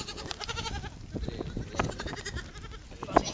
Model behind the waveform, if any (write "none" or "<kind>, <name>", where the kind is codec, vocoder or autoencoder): none